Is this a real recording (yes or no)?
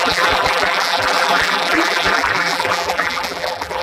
no